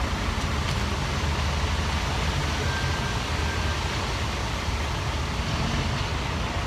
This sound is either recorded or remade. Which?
recorded